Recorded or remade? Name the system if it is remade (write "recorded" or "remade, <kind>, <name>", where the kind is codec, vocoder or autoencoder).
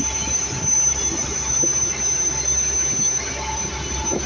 recorded